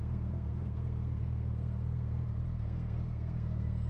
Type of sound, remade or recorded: remade